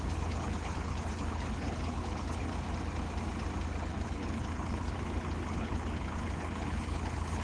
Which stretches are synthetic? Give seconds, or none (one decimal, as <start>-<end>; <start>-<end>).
0.0-2.5; 3.8-7.4